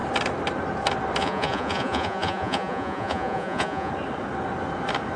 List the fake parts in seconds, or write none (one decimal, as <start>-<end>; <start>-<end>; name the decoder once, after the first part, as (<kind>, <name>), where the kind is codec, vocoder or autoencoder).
1.2-3.9 (vocoder, Vocos)